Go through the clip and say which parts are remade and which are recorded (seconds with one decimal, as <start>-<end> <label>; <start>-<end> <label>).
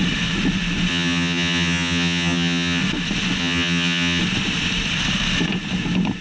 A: 0.0-0.9 recorded; 0.9-2.8 remade; 2.8-3.4 recorded; 3.4-4.2 remade; 4.2-6.2 recorded